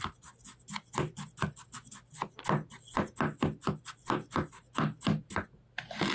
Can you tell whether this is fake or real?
real